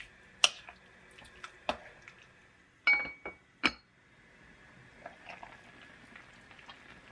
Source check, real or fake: real